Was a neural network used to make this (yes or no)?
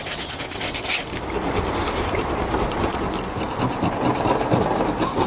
no